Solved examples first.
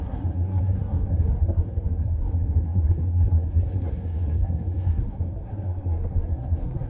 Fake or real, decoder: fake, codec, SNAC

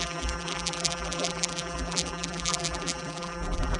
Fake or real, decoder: fake, vocoder, BigVGAN v2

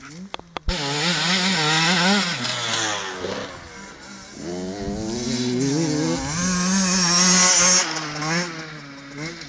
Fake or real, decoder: real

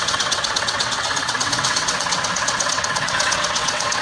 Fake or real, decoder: fake, vocoder, WaveNeXt